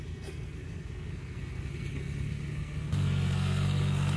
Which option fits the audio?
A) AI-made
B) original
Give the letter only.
A